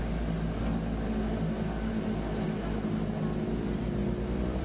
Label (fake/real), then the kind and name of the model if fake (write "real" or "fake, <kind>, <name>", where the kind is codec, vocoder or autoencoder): real